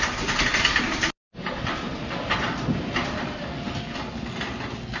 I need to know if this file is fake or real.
real